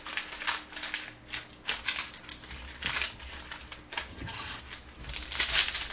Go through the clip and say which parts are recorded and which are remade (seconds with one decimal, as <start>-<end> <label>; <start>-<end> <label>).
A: 0.0-4.1 recorded; 4.1-4.6 remade; 4.6-5.9 recorded